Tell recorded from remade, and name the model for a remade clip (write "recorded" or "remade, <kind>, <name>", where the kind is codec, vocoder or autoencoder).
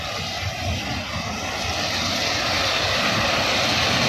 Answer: recorded